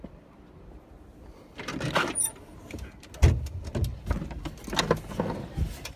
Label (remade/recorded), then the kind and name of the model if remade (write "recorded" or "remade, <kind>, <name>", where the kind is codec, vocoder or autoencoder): recorded